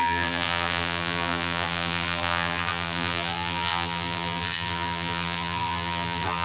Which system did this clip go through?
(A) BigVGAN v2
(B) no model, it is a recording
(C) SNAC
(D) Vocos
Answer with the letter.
A